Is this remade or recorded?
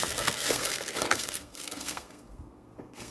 remade